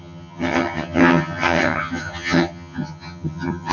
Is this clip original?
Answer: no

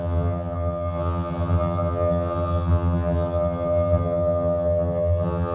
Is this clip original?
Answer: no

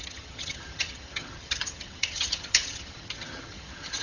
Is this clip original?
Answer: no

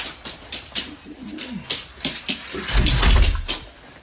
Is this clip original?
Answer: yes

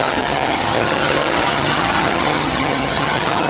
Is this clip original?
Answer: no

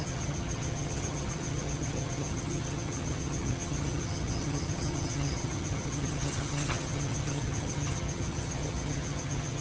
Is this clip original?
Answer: no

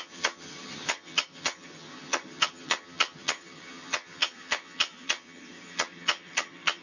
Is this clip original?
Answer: no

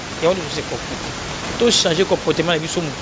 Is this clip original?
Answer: yes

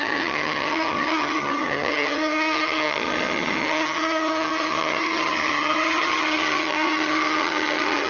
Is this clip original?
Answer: no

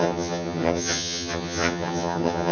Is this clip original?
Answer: no